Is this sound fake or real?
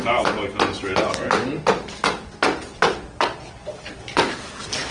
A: real